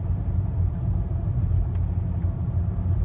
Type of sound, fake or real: real